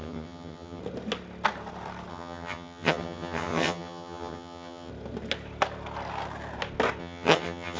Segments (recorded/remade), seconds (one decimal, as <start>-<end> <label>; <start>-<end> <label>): 0.0-0.8 remade; 0.8-2.1 recorded; 2.1-4.9 remade; 4.9-7.0 recorded; 7.0-7.8 remade